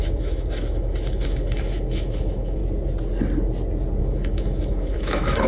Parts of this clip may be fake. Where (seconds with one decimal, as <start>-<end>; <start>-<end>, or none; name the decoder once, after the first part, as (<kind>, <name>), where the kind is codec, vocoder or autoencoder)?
0.0-2.6 (autoencoder, DAC-VAE); 4.0-5.5